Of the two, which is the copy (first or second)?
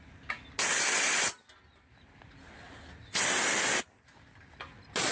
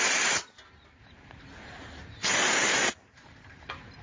second